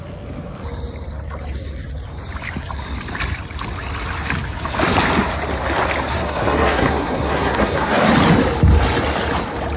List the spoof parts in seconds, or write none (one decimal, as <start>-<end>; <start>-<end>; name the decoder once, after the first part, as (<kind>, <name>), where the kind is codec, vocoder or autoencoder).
6.1-8.1 (codec, SNAC)